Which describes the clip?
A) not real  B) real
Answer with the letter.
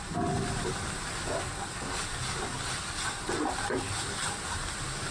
B